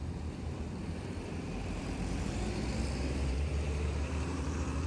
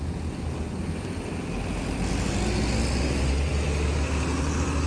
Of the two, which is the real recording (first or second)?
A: second